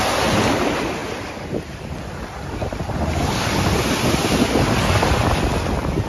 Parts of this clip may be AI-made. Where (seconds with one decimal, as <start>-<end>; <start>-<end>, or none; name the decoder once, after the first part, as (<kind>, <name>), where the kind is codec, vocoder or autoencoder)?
none